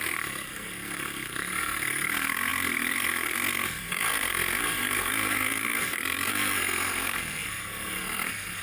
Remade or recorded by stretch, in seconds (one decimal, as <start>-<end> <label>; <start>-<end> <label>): 0.0-8.6 remade